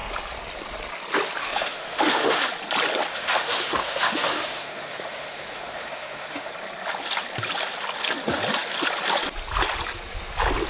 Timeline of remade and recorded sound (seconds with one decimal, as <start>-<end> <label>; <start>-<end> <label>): 0.0-1.4 recorded; 1.4-2.4 remade; 2.4-3.1 recorded; 3.1-6.5 remade; 6.5-10.7 recorded